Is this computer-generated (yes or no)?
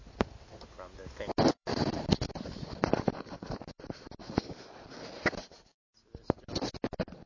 no